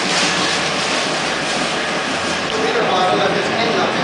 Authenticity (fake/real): real